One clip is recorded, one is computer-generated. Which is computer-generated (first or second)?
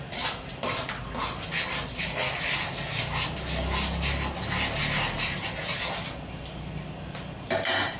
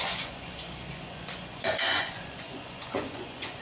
second